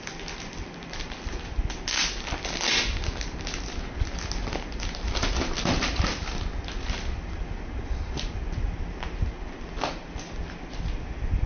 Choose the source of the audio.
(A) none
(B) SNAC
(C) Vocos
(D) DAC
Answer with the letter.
A